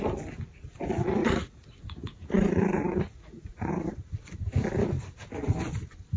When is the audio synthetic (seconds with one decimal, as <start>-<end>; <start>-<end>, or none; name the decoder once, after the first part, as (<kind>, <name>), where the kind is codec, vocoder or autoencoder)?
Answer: 1.2-3.7 (vocoder, Vocos)